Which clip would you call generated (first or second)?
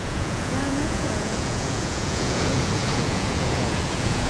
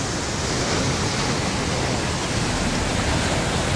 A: first